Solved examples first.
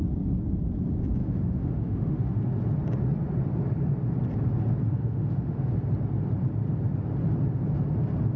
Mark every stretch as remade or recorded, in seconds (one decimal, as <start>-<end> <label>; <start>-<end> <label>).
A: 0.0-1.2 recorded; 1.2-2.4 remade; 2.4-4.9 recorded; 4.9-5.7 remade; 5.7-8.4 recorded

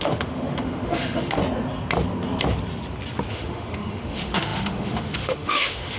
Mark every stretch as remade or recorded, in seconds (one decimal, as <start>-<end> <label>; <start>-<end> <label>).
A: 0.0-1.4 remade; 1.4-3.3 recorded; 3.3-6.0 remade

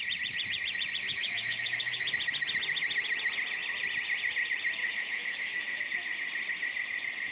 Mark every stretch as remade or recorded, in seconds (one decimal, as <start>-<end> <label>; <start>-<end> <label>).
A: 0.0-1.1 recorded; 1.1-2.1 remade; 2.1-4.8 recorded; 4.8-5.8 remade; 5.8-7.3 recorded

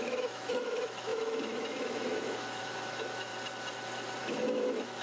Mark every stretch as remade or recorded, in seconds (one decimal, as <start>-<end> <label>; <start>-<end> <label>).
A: 0.0-3.3 remade; 3.3-4.2 recorded; 4.2-5.0 remade

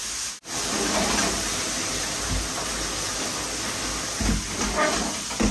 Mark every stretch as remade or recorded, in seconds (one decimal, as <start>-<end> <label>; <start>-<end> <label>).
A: 0.0-5.5 recorded

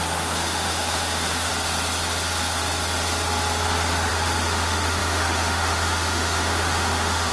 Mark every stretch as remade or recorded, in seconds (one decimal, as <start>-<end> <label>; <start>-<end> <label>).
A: 0.0-1.5 remade; 1.5-4.1 recorded; 4.1-7.3 remade

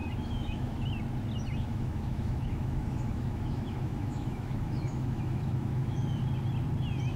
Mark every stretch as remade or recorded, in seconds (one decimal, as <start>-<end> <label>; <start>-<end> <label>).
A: 0.0-0.9 remade; 0.9-1.7 recorded; 1.7-6.0 remade; 6.0-7.2 recorded